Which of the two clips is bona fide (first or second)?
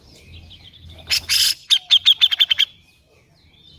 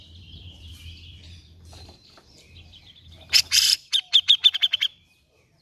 first